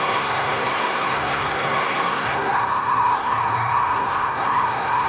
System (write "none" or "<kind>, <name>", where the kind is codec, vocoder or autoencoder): codec, SNAC